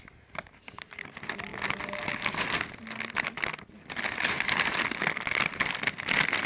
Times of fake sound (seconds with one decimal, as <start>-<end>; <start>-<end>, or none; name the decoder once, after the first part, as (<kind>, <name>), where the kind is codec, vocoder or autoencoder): none